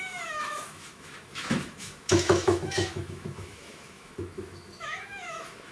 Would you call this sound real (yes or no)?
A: no